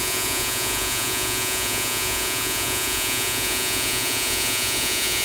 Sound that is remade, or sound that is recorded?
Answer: remade